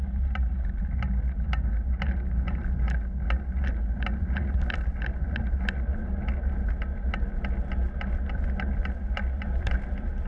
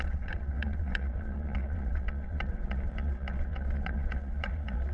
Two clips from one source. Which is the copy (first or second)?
second